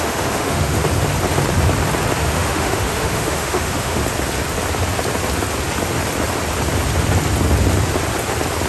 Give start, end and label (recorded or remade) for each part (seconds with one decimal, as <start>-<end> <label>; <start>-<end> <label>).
0.0-0.8 remade; 0.8-2.2 recorded; 2.2-4.0 remade; 4.0-8.7 recorded

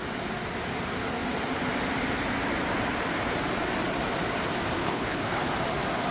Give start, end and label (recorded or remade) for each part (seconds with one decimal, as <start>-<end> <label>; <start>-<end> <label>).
0.0-4.8 recorded; 4.8-5.5 remade; 5.5-6.1 recorded

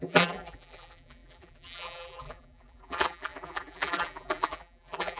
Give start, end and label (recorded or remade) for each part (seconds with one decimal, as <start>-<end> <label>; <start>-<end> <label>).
0.0-5.2 remade

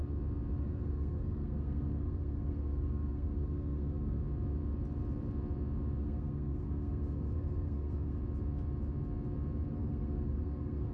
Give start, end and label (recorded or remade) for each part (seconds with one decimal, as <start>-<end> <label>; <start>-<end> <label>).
0.0-0.6 recorded; 0.6-4.2 remade; 4.2-6.0 recorded; 6.0-8.2 remade; 8.2-9.7 recorded; 9.7-10.9 remade